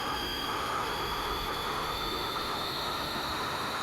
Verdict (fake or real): fake